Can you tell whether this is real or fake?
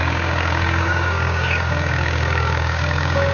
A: fake